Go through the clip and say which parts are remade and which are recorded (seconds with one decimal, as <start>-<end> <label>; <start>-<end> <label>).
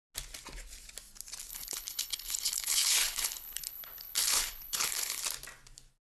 0.0-1.5 recorded; 1.5-5.2 remade; 5.2-6.2 recorded